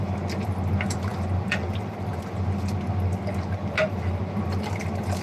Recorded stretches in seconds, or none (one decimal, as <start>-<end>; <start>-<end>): 0.0-5.2